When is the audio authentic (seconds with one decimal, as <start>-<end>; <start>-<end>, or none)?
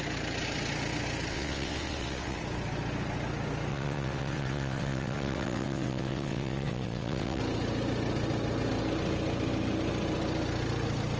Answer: 0.0-1.3; 2.4-3.7; 7.4-11.2